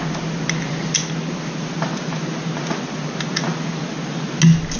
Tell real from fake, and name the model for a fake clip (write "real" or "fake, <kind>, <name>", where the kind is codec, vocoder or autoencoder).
real